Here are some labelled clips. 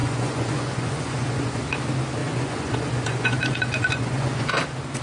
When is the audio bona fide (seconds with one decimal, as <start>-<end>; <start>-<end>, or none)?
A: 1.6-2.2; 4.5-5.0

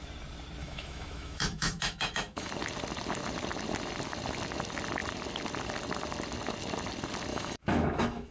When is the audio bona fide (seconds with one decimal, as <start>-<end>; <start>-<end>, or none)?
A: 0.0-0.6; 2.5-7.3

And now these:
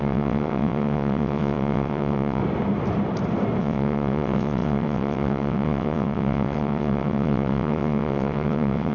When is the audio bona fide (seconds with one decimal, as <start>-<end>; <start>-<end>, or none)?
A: 2.4-3.6

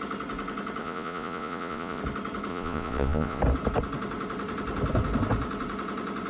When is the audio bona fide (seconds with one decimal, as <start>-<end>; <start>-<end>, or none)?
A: 0.0-0.8; 2.0-2.5; 3.4-6.3